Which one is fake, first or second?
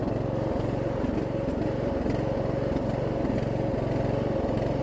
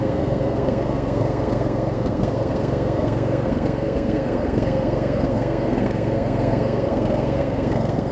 second